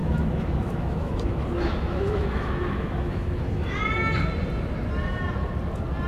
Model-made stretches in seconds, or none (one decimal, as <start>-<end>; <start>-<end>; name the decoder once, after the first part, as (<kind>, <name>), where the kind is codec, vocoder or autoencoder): 0.0-3.7 (autoencoder, DAC-VAE)